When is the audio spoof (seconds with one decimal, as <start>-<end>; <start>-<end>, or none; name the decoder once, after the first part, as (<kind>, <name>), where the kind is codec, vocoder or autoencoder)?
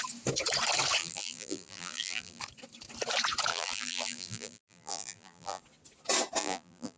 1.0-2.4 (vocoder, BigVGAN v2); 3.5-5.6; 6.4-7.0